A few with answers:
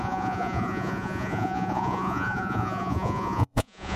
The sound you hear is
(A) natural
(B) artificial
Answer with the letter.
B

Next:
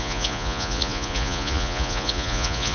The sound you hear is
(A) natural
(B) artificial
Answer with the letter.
B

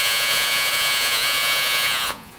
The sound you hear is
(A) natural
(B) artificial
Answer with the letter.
B